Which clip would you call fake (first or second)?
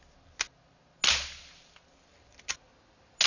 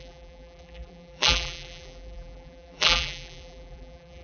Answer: second